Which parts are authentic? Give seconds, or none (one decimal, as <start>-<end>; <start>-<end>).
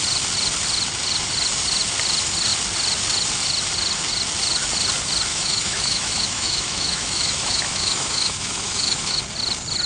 0.0-5.3; 9.2-9.9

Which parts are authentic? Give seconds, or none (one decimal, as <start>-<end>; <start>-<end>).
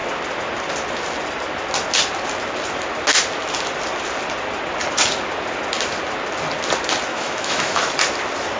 0.0-7.1; 7.9-8.6